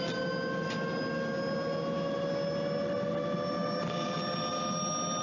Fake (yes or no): no